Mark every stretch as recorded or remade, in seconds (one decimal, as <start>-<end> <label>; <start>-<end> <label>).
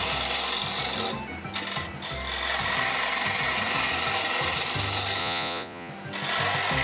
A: 0.0-5.2 recorded; 5.2-5.9 remade; 5.9-6.8 recorded